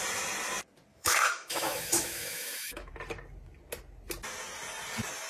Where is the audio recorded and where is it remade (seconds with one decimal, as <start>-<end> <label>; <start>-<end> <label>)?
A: 0.0-0.9 recorded; 0.9-2.9 remade; 2.9-5.3 recorded